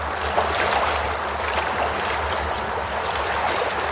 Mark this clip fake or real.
real